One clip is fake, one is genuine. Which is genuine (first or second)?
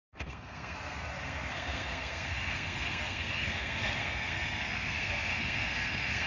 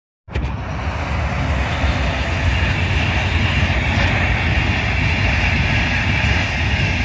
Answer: second